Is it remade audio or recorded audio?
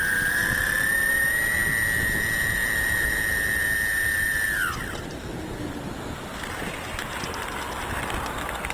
recorded